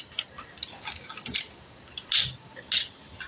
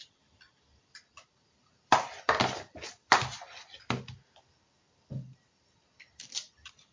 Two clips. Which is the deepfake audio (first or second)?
second